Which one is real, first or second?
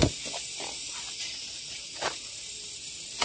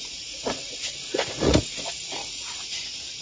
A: first